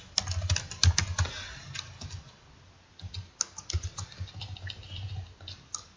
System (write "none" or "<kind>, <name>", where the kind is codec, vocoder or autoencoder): none